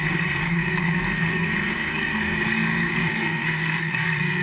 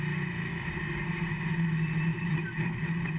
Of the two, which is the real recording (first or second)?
second